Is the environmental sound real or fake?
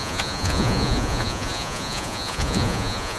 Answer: fake